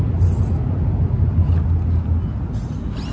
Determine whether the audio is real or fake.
real